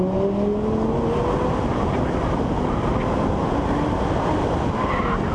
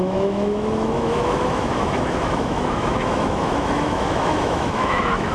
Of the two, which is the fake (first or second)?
second